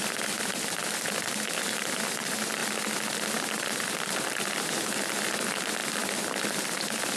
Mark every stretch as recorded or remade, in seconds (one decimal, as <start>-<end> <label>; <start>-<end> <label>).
0.0-7.2 recorded